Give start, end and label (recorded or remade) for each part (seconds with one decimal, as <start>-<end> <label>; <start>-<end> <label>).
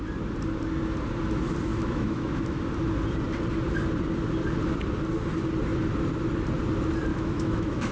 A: 0.0-1.7 recorded; 1.7-2.7 remade; 2.7-7.1 recorded; 7.1-7.9 remade